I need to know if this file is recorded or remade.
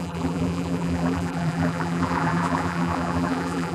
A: remade